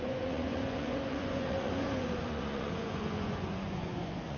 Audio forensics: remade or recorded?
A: remade